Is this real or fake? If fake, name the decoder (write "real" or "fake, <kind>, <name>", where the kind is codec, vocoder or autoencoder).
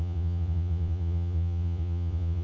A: fake, vocoder, Vocos